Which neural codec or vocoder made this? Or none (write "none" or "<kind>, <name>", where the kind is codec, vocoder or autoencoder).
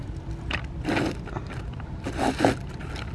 none